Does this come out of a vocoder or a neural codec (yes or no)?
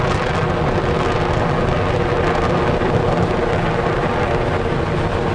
no